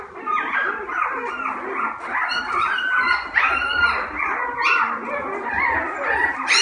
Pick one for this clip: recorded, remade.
recorded